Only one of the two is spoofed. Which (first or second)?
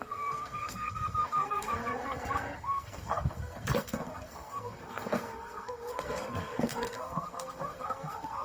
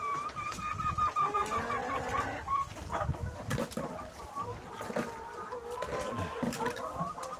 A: first